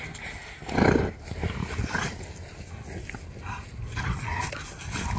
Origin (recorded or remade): recorded